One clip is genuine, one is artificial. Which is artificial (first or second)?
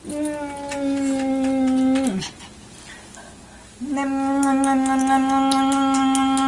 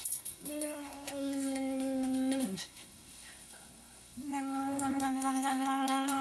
second